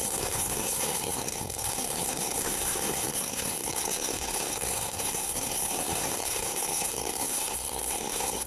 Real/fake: fake